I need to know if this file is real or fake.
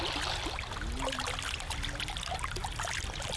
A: real